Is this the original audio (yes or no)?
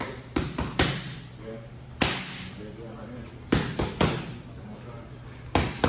yes